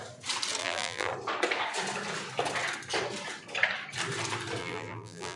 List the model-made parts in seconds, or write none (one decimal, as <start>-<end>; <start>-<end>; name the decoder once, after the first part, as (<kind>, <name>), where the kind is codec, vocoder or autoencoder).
0.6-1.1 (vocoder, BigVGAN v2); 4.6-5.4